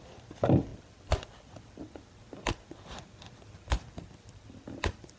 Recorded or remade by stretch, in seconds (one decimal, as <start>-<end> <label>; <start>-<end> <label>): 0.0-5.2 remade